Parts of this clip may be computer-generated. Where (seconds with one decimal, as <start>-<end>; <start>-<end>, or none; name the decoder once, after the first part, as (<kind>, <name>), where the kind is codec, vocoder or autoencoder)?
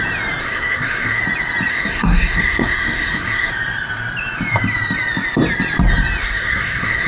0.4-1.2 (codec, SNAC); 1.7-3.5; 6.2-7.1